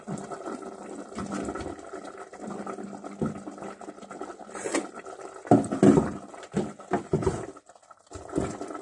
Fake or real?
real